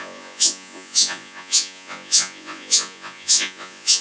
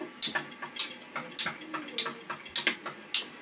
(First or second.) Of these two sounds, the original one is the second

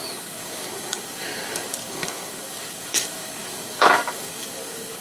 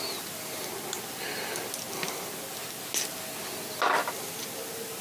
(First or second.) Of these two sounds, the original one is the second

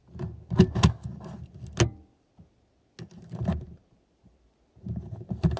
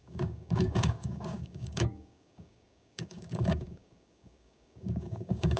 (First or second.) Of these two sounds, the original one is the first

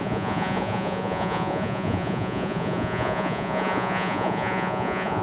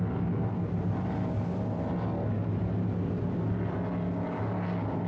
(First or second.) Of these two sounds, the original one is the second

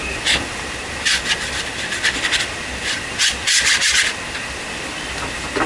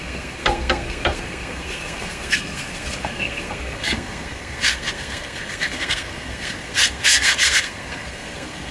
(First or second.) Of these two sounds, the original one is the first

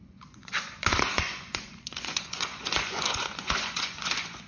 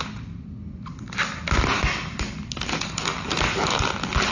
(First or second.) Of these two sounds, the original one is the second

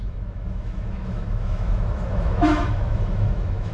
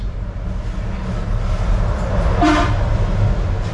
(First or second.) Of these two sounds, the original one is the second